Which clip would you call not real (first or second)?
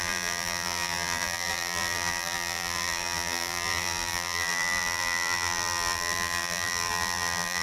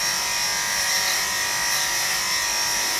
first